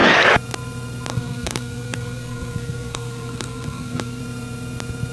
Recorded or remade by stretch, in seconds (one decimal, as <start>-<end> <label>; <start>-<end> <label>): 0.0-1.1 recorded; 1.1-4.2 remade; 4.2-5.1 recorded